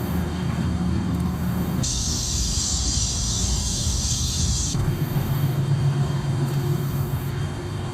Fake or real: fake